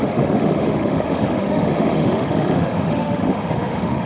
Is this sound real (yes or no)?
no